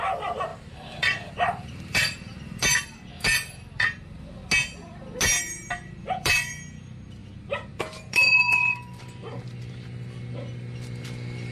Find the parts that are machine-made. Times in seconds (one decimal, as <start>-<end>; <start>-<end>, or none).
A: 0.0-4.4; 5.4-11.5